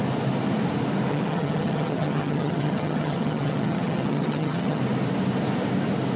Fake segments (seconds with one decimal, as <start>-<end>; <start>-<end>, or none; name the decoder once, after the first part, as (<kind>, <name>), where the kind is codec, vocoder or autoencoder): 1.1-4.8 (vocoder, HiFi-GAN)